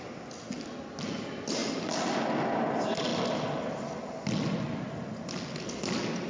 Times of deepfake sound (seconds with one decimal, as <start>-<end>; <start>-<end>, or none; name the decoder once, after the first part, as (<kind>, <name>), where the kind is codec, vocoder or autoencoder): none